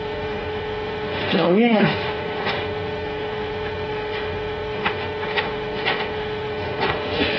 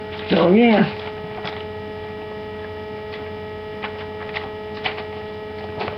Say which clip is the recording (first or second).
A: second